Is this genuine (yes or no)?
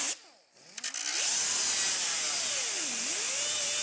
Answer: yes